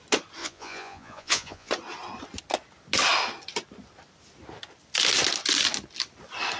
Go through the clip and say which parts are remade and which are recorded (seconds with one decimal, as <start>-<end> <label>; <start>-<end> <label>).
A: 0.0-0.4 recorded; 0.4-1.7 remade; 1.7-6.6 recorded